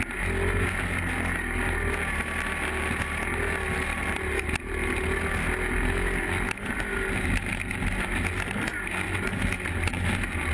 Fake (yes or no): no